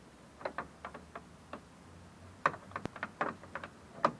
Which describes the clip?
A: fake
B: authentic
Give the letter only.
B